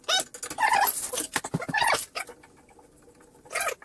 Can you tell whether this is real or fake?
real